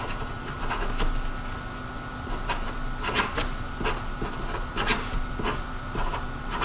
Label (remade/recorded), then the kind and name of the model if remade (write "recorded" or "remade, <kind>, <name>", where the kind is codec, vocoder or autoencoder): recorded